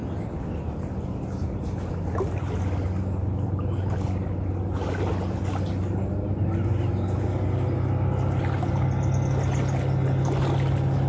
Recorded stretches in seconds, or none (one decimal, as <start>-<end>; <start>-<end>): 0.0-11.1